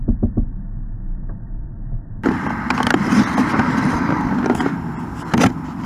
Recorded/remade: remade